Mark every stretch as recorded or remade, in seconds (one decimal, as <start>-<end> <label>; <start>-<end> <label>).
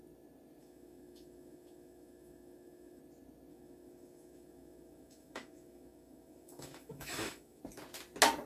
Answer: 0.0-0.6 recorded; 0.6-3.0 remade; 3.0-3.5 recorded; 3.5-7.6 remade; 7.6-8.5 recorded